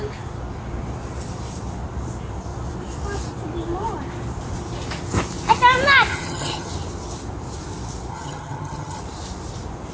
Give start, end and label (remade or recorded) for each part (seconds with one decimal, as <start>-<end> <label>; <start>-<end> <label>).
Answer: 0.0-6.1 recorded; 6.1-6.7 remade; 6.7-8.1 recorded; 8.1-9.0 remade; 9.0-9.9 recorded